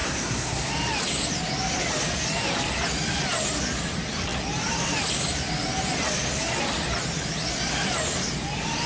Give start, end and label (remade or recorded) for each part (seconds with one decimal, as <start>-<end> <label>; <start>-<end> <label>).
0.0-0.7 remade; 0.7-8.9 recorded